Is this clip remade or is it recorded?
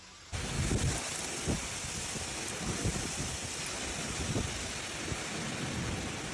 recorded